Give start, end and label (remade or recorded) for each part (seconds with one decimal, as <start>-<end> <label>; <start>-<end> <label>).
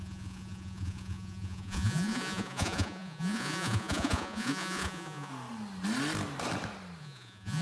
0.0-5.3 remade; 5.3-7.0 recorded; 7.0-7.6 remade